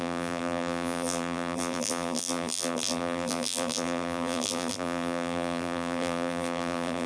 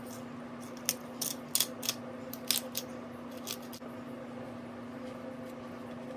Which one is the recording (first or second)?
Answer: second